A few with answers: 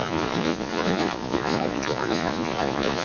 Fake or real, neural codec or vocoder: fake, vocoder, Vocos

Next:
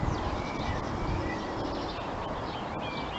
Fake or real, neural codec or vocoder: real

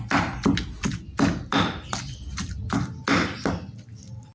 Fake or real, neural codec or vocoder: real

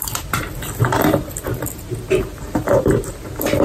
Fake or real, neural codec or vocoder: real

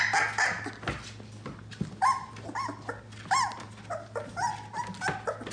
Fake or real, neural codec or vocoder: real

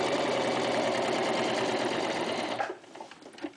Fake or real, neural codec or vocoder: real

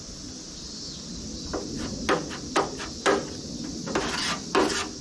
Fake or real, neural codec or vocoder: real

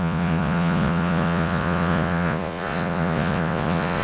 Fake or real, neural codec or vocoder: fake, vocoder, Vocos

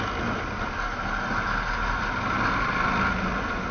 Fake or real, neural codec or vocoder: real